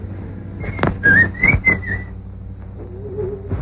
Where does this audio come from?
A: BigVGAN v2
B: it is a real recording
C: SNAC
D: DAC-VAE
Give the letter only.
B